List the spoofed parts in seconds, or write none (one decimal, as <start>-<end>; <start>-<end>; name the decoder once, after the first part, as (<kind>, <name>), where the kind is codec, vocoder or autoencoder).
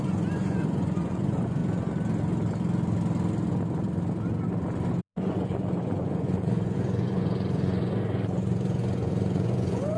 0.0-1.6 (vocoder, Vocos); 5.0-10.0